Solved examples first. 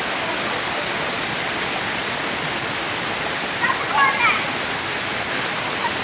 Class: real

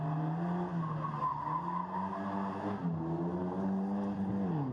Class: real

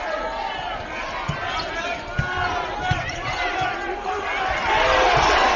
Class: real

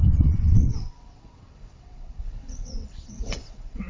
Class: fake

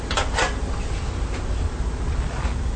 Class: real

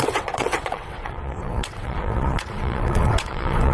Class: fake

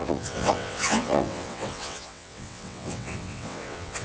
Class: fake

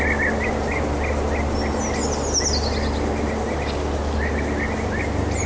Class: real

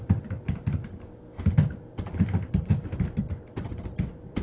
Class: real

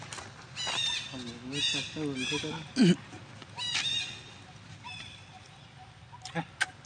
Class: real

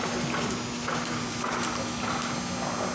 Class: real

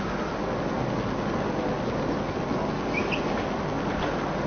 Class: real